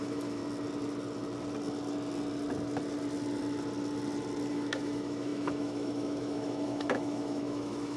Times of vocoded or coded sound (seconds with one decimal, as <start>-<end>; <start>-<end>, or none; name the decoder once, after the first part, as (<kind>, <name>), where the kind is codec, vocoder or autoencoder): 0.0-0.4 (autoencoder, DAC-VAE); 4.5-8.0

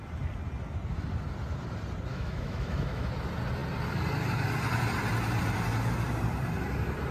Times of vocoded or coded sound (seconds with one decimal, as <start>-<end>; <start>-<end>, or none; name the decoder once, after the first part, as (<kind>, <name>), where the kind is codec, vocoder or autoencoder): 2.1-3.1 (autoencoder, DAC-VAE)

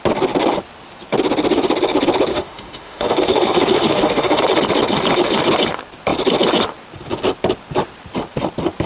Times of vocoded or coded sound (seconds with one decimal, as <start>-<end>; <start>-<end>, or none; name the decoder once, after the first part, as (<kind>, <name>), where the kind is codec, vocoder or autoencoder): 2.3-4.4 (autoencoder, DAC-VAE)

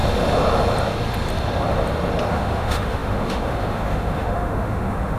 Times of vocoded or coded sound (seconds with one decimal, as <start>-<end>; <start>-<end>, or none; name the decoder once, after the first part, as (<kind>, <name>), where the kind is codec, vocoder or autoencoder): 2.2-5.2 (autoencoder, DAC-VAE)

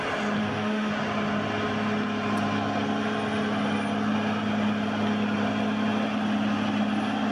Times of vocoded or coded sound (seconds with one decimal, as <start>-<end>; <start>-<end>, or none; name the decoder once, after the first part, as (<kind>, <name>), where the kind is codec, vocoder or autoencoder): 0.4-0.9 (autoencoder, DAC-VAE)